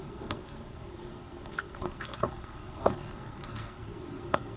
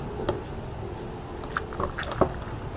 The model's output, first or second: first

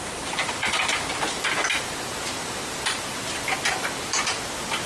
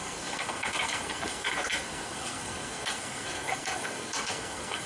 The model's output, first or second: second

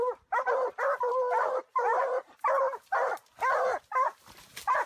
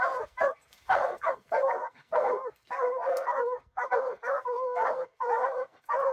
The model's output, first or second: second